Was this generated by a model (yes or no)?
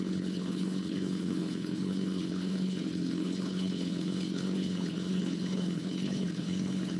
yes